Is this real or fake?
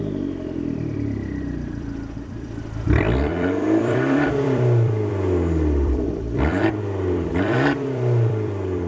fake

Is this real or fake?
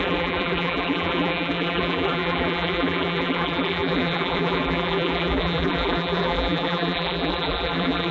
fake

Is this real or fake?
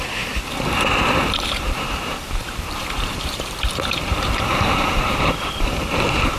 fake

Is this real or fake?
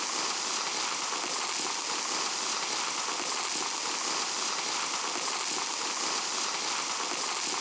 real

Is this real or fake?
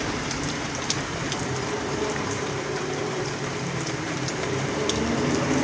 fake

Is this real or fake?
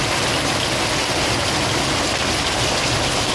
real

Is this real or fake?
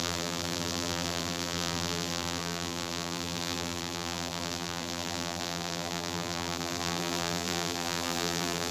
fake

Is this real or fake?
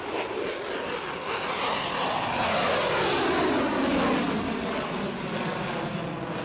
real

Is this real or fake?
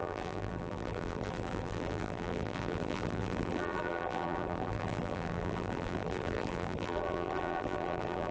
fake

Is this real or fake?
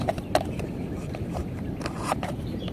real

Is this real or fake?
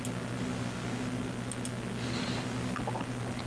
real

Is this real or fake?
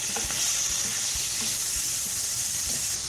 fake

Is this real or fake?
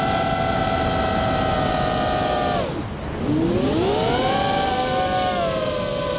real